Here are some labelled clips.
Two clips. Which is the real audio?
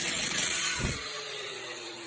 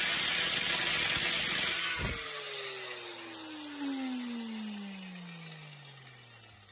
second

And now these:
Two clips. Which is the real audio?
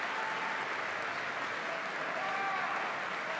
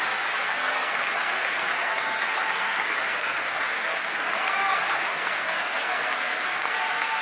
first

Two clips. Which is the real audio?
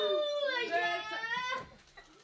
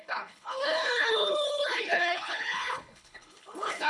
first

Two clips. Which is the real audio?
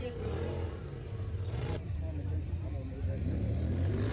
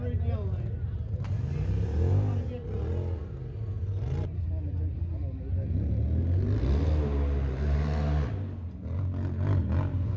second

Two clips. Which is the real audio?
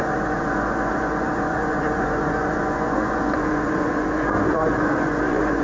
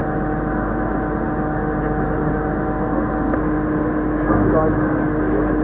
second